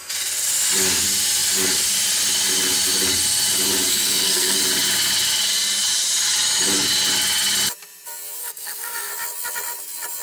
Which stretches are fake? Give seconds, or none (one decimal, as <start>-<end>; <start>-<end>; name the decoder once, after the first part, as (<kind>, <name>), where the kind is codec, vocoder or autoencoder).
3.9-4.6 (codec, SNAC); 8.4-9.1

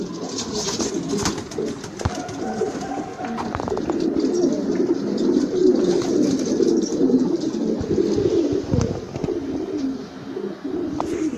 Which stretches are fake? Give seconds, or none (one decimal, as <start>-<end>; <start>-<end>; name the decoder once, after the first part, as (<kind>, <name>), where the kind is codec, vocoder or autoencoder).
none

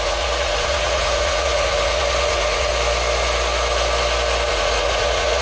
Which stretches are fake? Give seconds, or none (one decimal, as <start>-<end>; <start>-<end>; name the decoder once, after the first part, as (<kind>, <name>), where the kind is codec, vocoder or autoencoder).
0.0-2.7 (vocoder, Vocos); 4.5-5.4

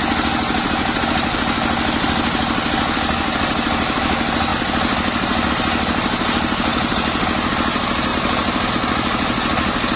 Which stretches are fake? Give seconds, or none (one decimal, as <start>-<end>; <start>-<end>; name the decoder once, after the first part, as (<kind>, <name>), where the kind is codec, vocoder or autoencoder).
8.1-8.7 (vocoder, BigVGAN v2)

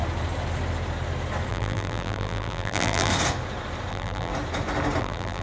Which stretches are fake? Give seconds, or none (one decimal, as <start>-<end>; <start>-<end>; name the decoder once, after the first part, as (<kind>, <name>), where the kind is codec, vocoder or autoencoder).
1.5-3.1 (vocoder, BigVGAN v2); 3.9-4.3; 5.0-5.4

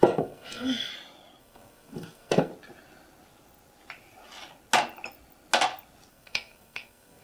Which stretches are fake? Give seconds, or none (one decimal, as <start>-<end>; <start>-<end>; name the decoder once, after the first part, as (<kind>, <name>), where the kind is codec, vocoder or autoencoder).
0.0-0.9 (codec, SNAC); 1.4-2.5; 6.1-7.2

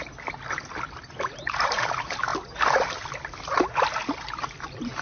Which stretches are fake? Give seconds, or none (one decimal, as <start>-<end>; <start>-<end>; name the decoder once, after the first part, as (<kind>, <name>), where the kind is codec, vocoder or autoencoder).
none

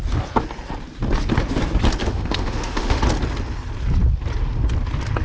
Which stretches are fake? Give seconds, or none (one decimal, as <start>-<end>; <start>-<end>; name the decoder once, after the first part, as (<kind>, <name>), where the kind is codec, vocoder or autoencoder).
2.0-3.0 (autoencoder, DAC-VAE)